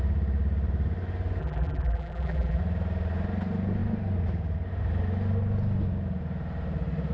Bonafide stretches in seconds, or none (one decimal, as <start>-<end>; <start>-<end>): 0.0-1.4; 2.6-7.1